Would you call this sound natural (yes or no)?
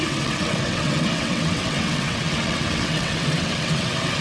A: no